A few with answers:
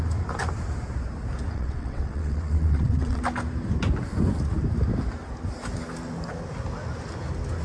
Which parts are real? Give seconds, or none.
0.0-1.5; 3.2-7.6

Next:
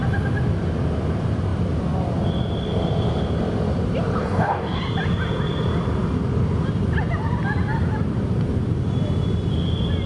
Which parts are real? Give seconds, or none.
0.0-4.2; 4.8-10.1

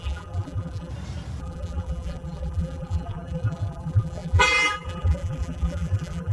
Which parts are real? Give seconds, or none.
0.9-1.4

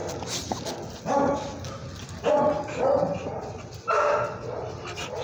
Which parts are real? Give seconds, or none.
0.0-5.2

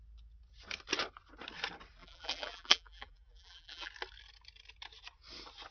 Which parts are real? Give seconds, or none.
0.0-2.0; 3.9-5.7